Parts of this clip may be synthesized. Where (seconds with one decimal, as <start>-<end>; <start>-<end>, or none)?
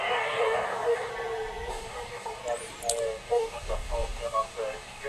0.0-1.1; 1.7-2.4; 3.0-5.1